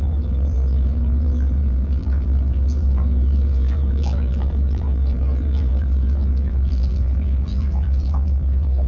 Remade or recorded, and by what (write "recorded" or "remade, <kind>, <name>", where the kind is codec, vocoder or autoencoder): remade, vocoder, BigVGAN v2